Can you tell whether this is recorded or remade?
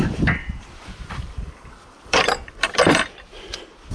remade